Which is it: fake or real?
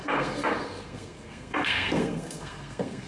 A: fake